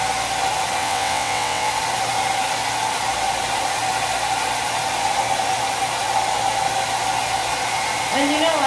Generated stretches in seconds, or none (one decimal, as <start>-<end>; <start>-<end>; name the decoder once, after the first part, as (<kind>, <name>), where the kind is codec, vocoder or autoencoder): 0.8-1.7 (vocoder, WaveNeXt)